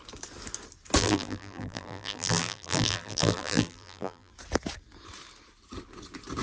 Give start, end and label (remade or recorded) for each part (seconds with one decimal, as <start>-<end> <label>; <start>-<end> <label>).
0.0-1.0 recorded; 1.0-4.3 remade; 4.3-6.4 recorded